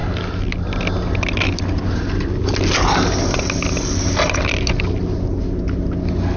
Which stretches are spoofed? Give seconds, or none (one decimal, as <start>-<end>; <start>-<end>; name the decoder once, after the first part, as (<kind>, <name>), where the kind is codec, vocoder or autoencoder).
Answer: none